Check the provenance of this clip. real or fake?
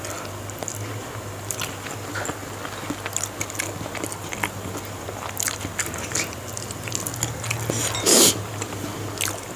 real